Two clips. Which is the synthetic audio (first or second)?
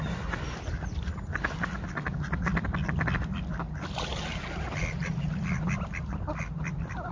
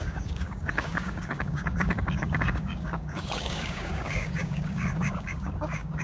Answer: second